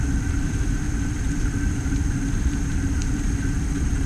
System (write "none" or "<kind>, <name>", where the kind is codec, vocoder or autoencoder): vocoder, BigVGAN v2